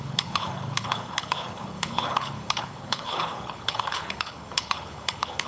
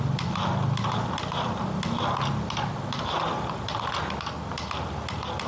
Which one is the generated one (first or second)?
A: first